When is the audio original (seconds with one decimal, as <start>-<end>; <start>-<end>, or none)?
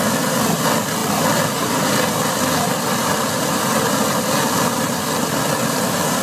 0.0-6.2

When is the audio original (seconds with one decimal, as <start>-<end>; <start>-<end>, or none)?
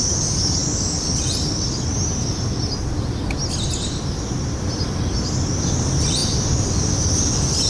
0.0-7.7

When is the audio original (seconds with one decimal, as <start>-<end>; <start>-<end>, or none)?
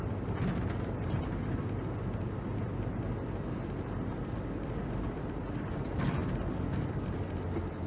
0.0-7.9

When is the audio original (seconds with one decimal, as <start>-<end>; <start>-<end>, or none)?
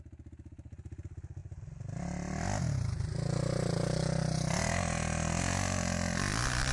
0.0-6.7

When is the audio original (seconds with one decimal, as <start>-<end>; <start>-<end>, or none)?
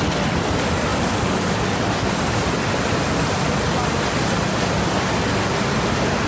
0.0-0.9; 4.6-6.3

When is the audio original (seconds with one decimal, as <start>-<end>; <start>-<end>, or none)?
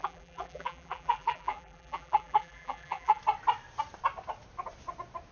3.2-5.3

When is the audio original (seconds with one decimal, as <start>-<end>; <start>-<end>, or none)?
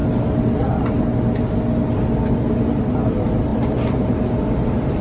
0.0-2.8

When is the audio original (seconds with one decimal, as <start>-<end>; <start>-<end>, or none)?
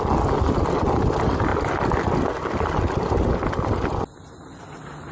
0.0-5.1